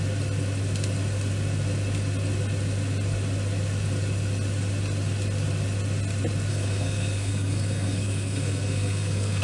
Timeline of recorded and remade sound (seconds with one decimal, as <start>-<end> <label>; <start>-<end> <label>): 0.0-6.5 recorded; 6.5-9.4 remade